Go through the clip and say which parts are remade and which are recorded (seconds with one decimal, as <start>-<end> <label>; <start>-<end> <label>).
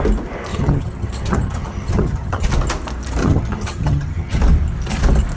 0.0-0.5 recorded; 0.5-2.5 remade; 2.5-3.2 recorded; 3.2-4.4 remade; 4.4-5.4 recorded